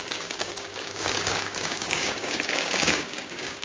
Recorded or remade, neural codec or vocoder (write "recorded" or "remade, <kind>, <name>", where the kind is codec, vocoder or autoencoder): remade, codec, DAC